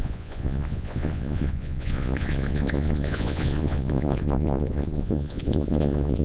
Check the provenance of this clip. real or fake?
fake